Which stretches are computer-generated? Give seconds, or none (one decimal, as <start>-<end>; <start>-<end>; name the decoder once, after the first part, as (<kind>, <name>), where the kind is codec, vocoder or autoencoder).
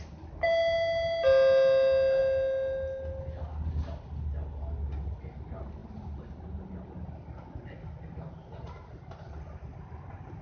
none